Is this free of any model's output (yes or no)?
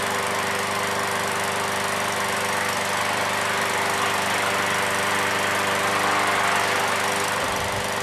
yes